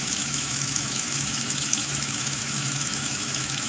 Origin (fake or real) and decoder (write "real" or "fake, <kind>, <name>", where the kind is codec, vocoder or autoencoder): fake, autoencoder, DAC-VAE